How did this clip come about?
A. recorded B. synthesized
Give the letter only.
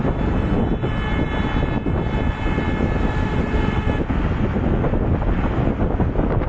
A